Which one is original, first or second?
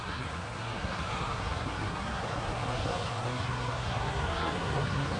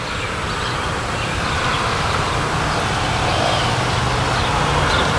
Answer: second